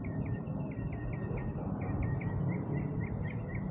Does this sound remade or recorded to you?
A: recorded